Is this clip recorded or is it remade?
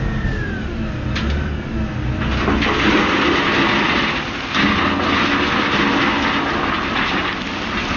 recorded